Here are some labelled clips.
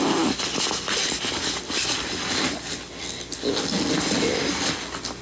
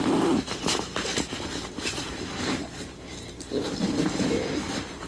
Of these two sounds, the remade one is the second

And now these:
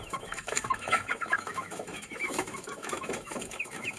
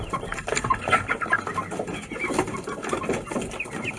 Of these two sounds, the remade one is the first